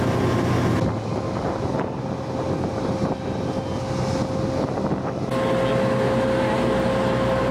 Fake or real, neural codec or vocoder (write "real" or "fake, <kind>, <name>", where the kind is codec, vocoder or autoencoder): real